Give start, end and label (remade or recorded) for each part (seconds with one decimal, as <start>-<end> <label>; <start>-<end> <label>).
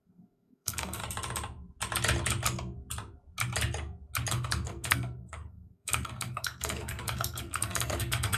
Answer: 0.0-1.0 remade; 1.0-4.3 recorded; 4.3-8.4 remade